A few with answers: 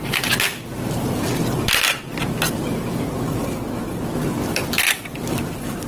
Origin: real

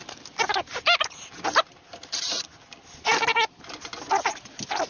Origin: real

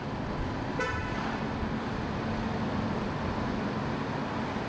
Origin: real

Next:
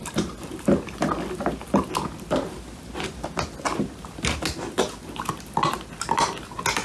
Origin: real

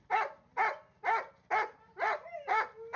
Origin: real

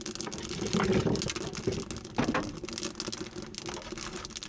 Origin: real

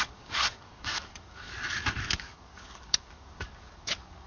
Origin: fake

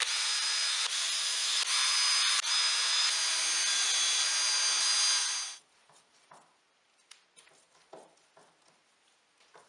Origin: real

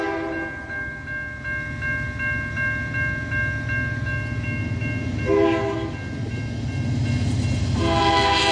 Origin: real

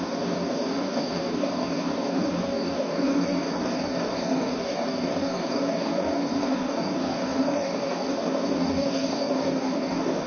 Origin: fake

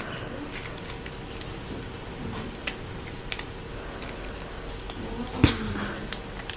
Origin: real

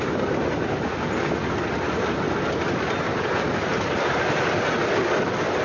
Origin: real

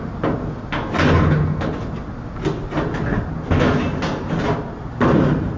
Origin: real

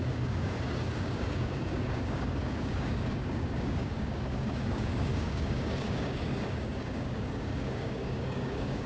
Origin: fake